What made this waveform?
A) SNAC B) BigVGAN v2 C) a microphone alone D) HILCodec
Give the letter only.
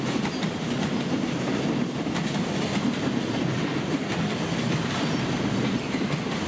C